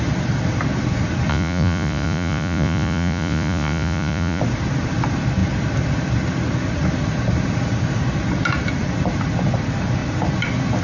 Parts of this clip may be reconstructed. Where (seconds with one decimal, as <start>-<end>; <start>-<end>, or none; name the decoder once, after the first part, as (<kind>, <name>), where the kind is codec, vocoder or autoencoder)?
1.3-4.4 (vocoder, Vocos)